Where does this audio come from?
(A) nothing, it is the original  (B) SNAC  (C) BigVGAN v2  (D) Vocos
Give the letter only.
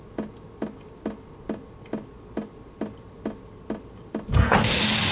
A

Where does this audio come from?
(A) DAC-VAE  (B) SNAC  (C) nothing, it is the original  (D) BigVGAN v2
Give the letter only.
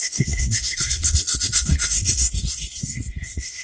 B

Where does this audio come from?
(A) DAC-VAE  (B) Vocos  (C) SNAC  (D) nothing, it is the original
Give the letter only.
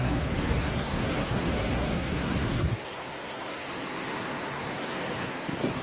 C